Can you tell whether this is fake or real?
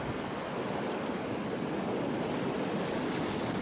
real